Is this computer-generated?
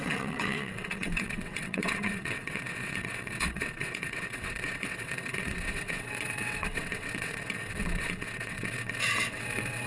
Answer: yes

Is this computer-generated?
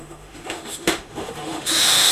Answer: yes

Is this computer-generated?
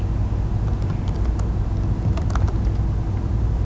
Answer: no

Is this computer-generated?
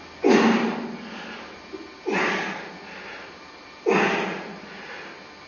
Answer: no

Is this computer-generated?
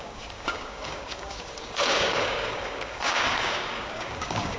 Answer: yes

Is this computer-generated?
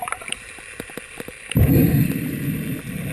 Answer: yes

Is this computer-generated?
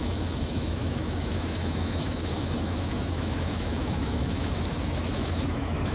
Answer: yes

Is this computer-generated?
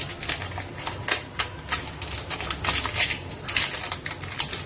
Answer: no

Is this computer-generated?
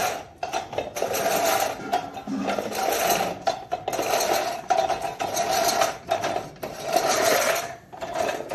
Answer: no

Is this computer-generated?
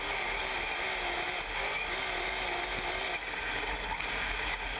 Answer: no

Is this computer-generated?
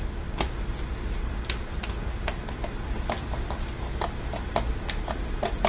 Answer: no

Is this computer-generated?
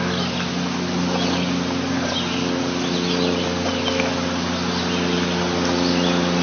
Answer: no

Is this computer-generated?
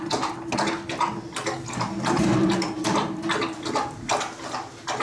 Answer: no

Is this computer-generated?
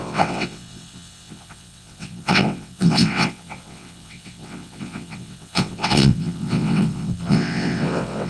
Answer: yes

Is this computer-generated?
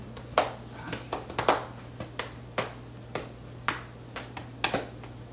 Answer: no